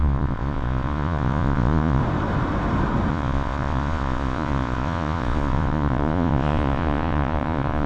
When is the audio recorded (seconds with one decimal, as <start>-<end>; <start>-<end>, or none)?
2.0-3.1